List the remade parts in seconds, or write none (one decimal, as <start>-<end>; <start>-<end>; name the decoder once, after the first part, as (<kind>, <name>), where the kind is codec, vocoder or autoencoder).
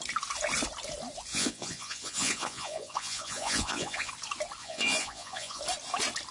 1.3-4.1 (vocoder, Vocos); 4.6-5.6